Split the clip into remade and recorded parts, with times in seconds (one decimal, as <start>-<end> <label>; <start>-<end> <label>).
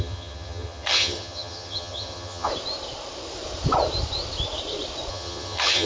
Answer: 0.0-2.5 remade; 2.5-5.1 recorded; 5.1-5.9 remade